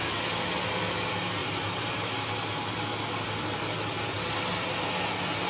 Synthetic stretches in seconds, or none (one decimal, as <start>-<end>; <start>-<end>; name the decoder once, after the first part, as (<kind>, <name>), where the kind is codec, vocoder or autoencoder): none